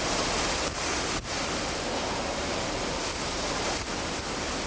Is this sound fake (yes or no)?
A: no